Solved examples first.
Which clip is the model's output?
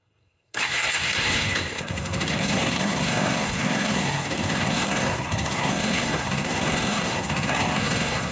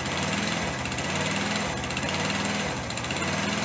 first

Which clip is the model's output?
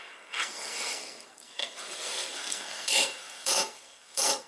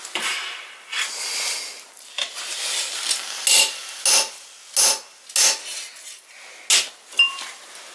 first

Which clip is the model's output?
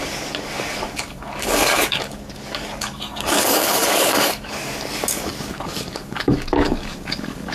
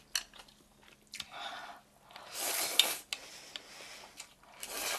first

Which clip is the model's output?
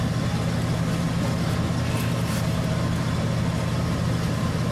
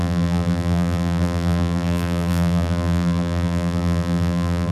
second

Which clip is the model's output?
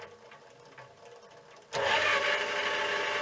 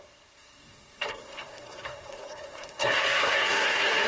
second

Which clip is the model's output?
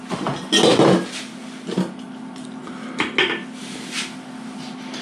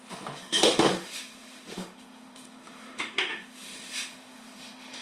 second